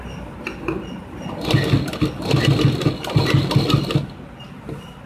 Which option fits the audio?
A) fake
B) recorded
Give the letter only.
B